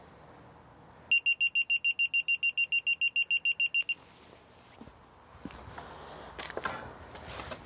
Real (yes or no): yes